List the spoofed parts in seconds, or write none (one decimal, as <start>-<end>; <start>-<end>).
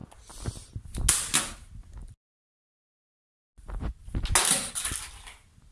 none